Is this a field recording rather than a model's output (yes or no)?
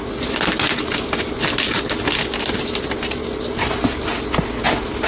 yes